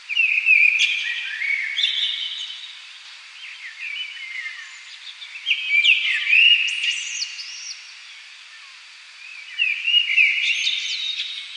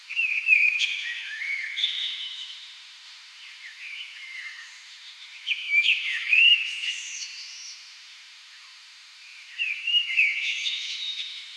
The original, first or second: first